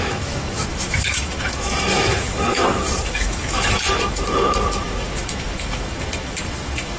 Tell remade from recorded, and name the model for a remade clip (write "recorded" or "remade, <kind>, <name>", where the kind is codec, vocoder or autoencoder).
remade, autoencoder, DAC-VAE